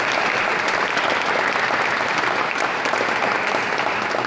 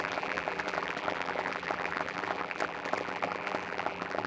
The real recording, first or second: first